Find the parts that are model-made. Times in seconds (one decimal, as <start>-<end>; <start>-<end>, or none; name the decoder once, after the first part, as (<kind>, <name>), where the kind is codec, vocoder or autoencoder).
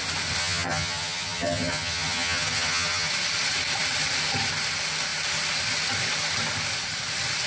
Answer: 0.4-3.1 (vocoder, HiFi-GAN)